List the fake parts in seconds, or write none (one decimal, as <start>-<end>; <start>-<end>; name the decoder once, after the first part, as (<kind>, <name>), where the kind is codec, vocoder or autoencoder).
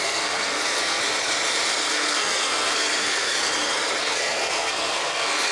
0.0-1.0 (codec, SNAC); 1.9-3.4; 4.0-5.5